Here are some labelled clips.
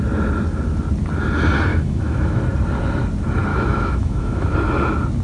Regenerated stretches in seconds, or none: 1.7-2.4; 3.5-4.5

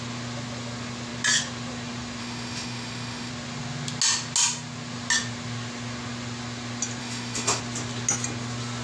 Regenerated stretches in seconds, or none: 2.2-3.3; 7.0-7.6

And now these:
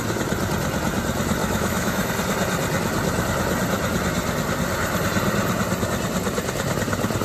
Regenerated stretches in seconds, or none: 1.4-2.1

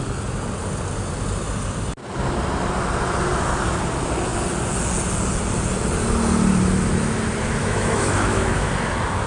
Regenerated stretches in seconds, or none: 7.6-8.7